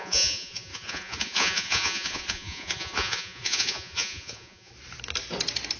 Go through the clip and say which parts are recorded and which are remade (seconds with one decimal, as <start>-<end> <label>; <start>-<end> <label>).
0.0-4.7 remade; 4.7-5.8 recorded